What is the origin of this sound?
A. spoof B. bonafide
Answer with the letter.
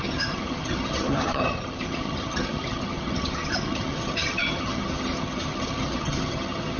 A